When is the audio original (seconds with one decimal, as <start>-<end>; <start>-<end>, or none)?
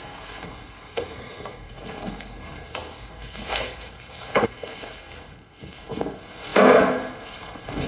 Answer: none